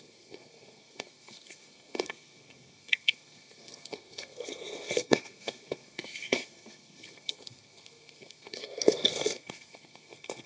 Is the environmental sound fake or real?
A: fake